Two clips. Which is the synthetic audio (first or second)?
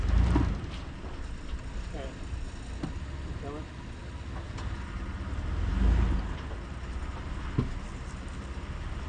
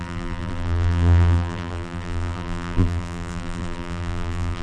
second